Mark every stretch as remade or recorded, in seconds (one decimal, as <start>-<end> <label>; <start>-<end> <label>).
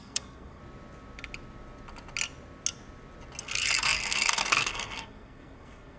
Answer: 0.0-0.6 remade; 0.6-3.4 recorded; 3.4-6.0 remade